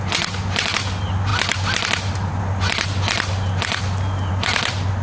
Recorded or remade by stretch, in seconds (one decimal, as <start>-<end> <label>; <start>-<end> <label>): 0.0-5.0 recorded